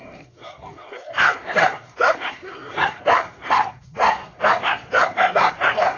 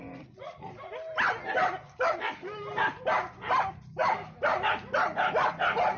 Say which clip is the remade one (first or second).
first